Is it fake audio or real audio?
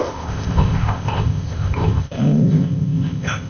fake